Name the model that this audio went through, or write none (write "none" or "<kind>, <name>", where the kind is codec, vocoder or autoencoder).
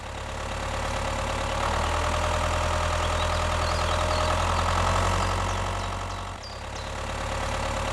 none